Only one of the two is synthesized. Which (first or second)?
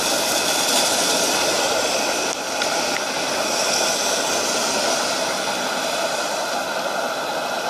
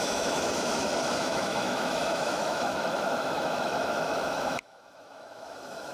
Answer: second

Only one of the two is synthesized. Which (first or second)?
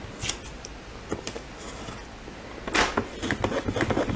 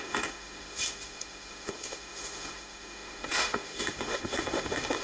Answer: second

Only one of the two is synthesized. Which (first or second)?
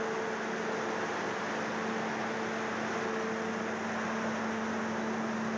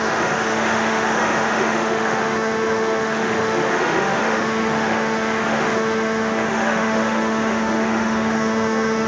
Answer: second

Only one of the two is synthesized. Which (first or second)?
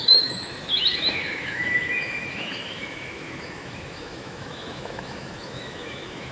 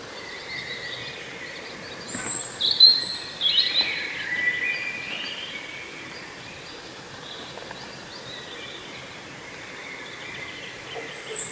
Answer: first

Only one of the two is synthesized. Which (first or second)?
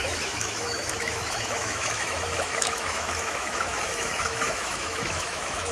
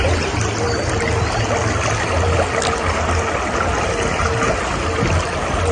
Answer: first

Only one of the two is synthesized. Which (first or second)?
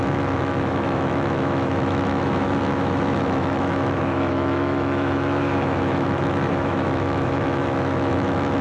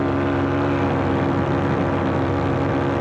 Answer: first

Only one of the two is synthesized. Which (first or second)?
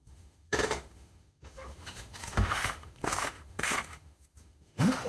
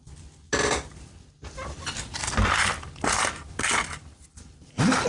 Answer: first